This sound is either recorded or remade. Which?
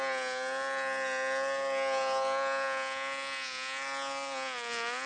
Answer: recorded